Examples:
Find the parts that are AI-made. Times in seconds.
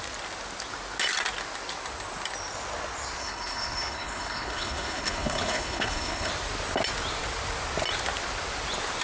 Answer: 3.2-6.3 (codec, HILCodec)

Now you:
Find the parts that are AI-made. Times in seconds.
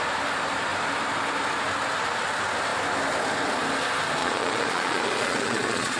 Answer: 4.2-6.0 (vocoder, Vocos)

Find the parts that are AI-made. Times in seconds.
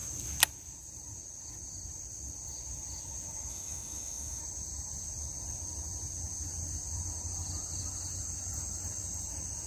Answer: 3.5-4.4 (autoencoder, DAC-VAE)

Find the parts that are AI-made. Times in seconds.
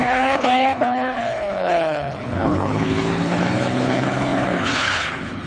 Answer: 0.0-5.5 (codec, HILCodec)